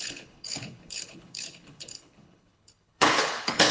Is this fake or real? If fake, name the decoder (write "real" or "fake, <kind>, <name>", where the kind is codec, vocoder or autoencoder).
fake, codec, HILCodec